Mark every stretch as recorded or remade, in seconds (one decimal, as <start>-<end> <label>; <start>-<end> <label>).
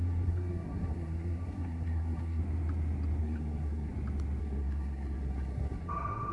0.0-2.4 remade; 2.4-3.2 recorded; 3.2-3.9 remade; 3.9-4.4 recorded; 4.4-6.3 remade